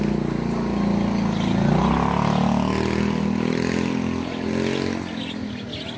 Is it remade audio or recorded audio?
recorded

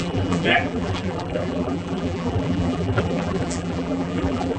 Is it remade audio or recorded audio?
remade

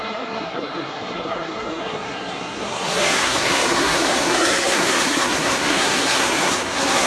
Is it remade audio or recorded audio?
remade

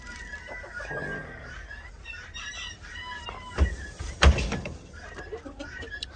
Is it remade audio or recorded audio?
remade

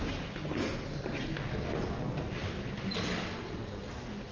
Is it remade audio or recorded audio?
recorded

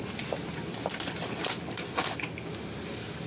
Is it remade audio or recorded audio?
recorded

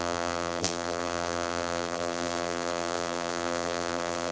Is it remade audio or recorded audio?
remade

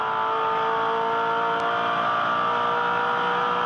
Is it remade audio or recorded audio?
recorded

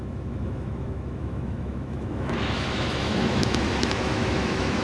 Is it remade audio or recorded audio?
remade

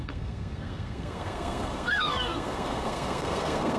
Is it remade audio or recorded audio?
remade